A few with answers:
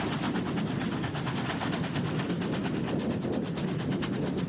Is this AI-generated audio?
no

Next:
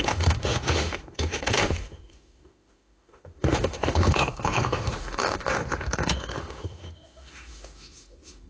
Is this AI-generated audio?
yes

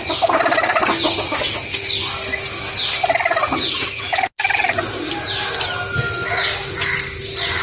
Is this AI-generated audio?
no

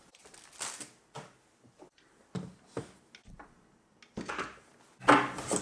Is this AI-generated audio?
no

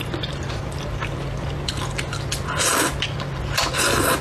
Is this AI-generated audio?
no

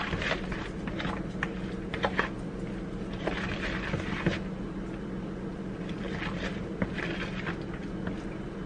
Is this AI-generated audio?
no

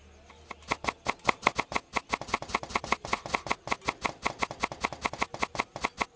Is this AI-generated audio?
no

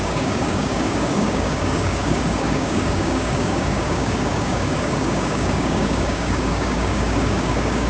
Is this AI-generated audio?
yes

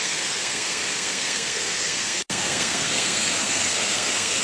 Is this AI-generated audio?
yes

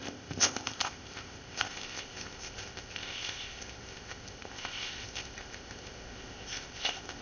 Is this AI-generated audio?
yes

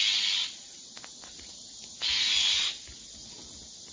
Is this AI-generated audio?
no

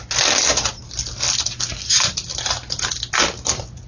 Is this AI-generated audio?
no